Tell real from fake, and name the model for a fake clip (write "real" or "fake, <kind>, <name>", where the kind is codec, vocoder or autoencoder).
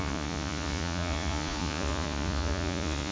fake, vocoder, Vocos